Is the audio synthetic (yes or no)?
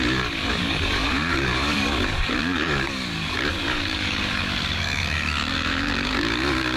yes